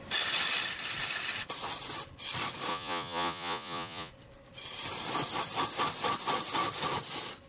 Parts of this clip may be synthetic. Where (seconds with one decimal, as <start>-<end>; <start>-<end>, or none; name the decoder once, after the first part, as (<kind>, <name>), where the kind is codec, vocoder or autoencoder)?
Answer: 2.7-4.1 (vocoder, Vocos)